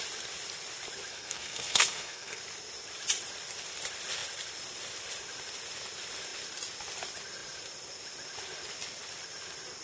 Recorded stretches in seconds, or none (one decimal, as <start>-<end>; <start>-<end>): 0.0-1.1; 2.4-9.8